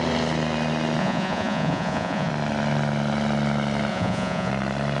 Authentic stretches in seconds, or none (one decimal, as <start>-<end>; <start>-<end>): 0.0-1.0; 2.3-3.9; 4.5-5.0